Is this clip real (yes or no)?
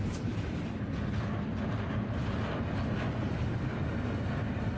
yes